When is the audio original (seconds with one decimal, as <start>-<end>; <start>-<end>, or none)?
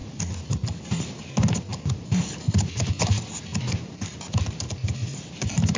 0.0-5.8